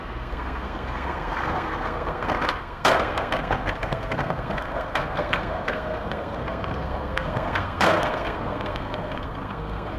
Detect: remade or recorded remade